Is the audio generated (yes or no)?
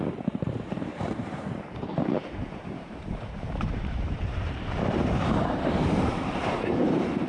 yes